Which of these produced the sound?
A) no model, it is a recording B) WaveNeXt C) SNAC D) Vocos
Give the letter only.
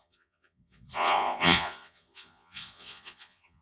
D